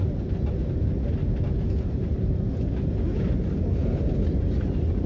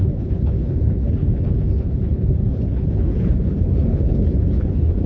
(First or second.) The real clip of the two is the first